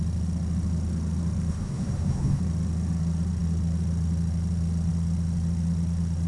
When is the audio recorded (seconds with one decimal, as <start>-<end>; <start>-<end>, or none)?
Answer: 0.0-1.5; 2.4-6.3